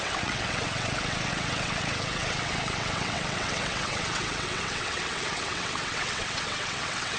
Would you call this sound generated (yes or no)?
yes